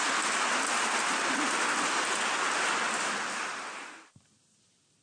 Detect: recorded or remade recorded